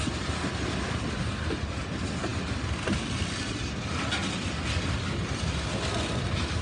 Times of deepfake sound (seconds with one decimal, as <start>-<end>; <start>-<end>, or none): none